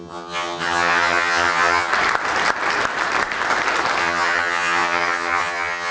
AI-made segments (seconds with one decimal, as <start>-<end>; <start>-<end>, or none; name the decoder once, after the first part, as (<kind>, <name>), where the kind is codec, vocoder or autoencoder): 0.0-1.9 (vocoder, HiFi-GAN); 4.0-5.9

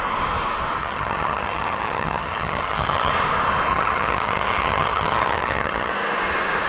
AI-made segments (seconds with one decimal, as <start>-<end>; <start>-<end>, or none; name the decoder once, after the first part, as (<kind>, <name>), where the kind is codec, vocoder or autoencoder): 0.8-3.1 (vocoder, HiFi-GAN); 3.7-5.9

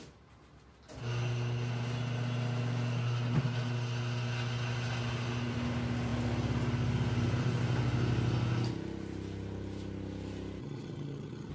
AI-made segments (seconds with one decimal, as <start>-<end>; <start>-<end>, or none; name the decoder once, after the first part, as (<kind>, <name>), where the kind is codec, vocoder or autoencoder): 10.6-11.5 (vocoder, HiFi-GAN)

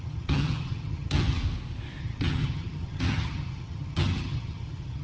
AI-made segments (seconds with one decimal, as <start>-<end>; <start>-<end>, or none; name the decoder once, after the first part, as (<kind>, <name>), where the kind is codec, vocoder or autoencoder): 0.0-1.4 (vocoder, HiFi-GAN); 2.0-5.0